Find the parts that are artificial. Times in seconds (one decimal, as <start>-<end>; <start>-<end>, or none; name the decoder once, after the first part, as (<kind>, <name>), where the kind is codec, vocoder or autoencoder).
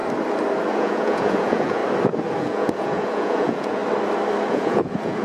0.7-1.8 (vocoder, Vocos); 2.4-3.8; 4.5-5.2